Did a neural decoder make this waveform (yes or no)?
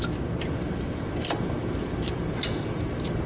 no